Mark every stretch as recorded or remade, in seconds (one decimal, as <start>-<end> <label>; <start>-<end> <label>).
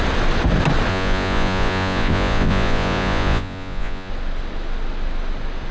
0.0-0.9 recorded; 0.9-4.1 remade; 4.1-5.7 recorded